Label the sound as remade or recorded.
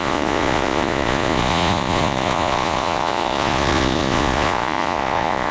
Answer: remade